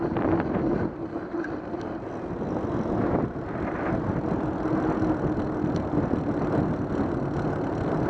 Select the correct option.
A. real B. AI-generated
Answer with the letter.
A